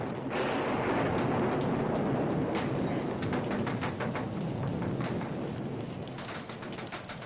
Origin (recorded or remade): recorded